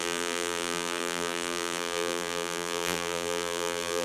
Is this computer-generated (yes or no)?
yes